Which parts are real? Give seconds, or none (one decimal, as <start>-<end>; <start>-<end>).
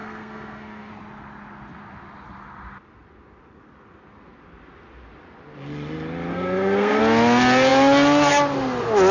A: 0.9-6.3; 7.0-9.1